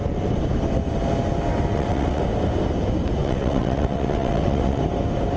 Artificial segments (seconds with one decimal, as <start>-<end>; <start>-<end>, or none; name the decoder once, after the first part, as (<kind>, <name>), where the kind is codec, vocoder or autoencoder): 1.7-2.2 (vocoder, WaveNeXt); 3.2-4.8